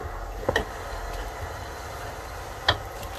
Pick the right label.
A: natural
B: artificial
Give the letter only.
A